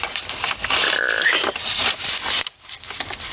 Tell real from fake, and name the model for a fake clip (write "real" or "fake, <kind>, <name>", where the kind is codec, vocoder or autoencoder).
real